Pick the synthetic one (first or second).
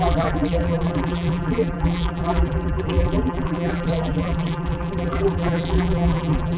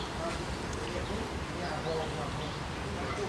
first